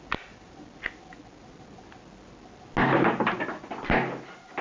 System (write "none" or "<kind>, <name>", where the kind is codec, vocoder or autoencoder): none